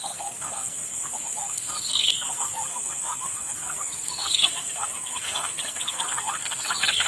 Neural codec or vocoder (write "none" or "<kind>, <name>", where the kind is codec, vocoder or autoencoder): codec, SNAC